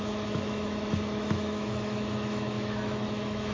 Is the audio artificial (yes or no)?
yes